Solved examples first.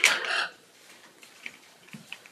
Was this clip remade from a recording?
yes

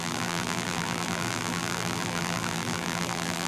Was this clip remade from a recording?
yes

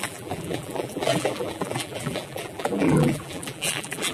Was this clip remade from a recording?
yes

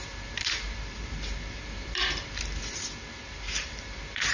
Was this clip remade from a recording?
yes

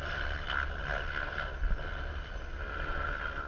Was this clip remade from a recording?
no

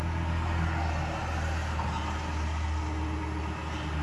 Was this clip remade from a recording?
no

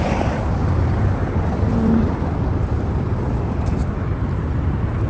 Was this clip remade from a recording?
yes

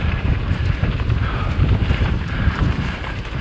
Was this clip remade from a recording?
yes